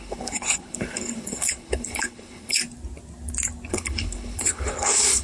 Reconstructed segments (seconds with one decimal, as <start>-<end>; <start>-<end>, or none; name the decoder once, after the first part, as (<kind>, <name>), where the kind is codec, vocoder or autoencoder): 0.0-2.6 (codec, HILCodec); 3.7-5.2